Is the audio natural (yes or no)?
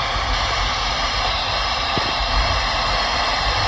yes